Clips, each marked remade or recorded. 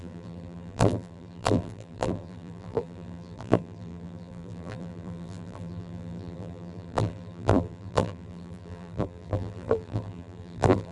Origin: remade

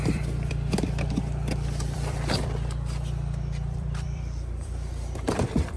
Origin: remade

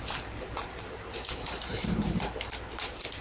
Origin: remade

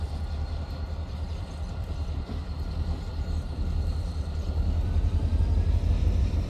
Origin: remade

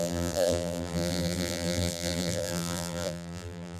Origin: remade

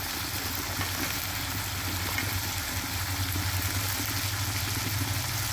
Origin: recorded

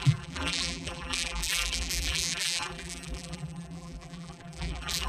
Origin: remade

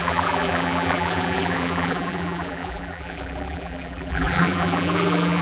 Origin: remade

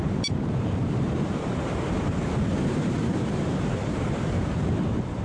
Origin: remade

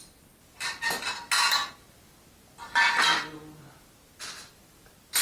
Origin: recorded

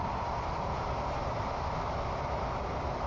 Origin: recorded